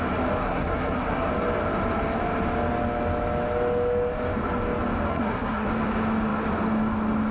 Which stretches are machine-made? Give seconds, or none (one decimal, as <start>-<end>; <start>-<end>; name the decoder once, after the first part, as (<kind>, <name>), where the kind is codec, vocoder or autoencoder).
0.4-1.3 (codec, SNAC); 5.1-5.7